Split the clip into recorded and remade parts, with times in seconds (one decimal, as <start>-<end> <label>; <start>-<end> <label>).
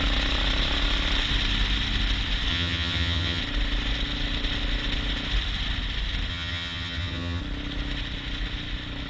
0.0-2.5 recorded; 2.5-3.4 remade; 3.4-6.3 recorded; 6.3-7.4 remade; 7.4-9.1 recorded